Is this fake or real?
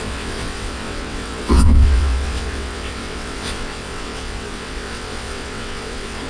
fake